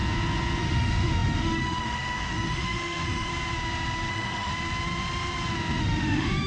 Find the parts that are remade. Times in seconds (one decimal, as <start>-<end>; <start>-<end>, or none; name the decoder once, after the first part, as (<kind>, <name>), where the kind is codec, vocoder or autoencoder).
0.6-3.3 (autoencoder, DAC-VAE); 4.1-4.5; 5.8-6.5